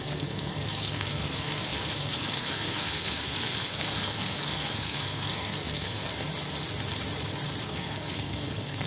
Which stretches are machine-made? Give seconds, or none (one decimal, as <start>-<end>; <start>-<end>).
0.0-6.3; 7.6-8.9